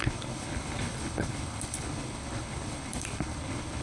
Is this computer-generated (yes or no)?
yes